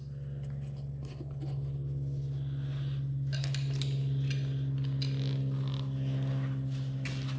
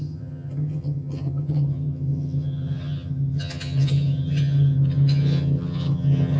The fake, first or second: second